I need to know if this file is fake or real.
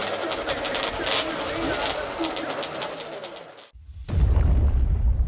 real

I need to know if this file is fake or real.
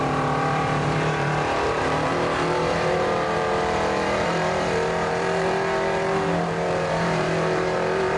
fake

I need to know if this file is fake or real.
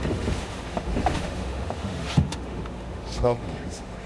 fake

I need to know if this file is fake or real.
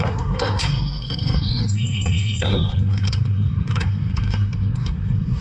fake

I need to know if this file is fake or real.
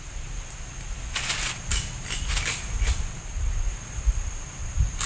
real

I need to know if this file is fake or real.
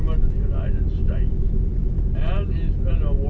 real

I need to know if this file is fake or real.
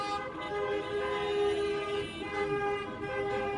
real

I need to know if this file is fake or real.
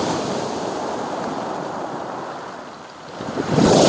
fake